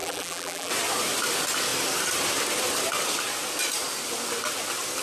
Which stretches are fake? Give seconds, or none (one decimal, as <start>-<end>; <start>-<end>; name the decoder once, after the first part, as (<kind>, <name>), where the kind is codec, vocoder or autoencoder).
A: 0.0-0.7 (vocoder, BigVGAN v2)